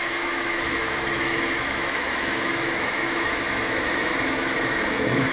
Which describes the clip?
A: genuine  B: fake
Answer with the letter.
B